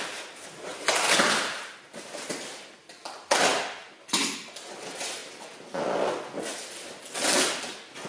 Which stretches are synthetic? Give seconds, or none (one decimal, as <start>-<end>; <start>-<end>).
0.7-2.3